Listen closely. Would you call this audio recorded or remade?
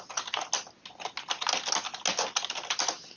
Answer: recorded